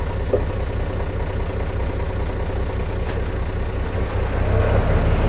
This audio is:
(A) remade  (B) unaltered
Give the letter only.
B